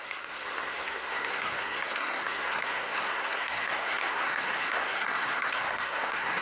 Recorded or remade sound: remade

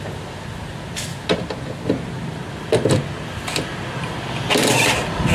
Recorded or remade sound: recorded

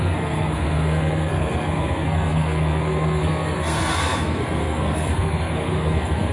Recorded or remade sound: remade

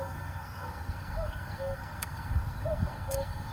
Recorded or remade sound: remade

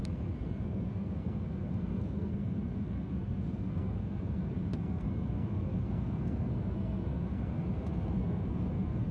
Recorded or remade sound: remade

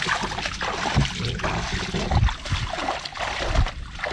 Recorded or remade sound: recorded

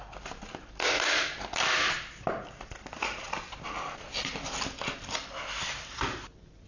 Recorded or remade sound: recorded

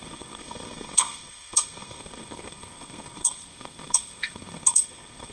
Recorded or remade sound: remade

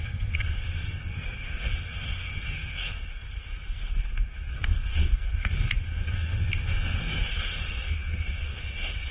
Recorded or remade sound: remade